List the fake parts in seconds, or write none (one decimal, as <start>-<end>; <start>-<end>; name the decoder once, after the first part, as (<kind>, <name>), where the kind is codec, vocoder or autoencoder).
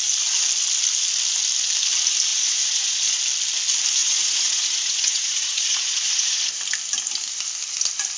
2.3-3.2 (vocoder, Vocos); 4.0-6.6